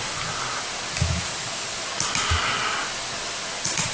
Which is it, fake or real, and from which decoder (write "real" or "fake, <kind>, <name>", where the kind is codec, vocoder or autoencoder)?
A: real